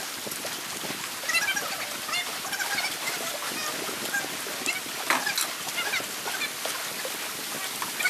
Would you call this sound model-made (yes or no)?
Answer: no